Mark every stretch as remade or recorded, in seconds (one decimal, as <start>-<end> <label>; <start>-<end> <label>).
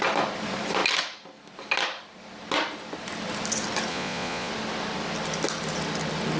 0.0-3.9 recorded; 3.9-4.5 remade; 4.5-6.4 recorded